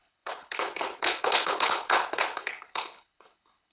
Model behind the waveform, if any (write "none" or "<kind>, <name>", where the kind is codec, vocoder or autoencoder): codec, HILCodec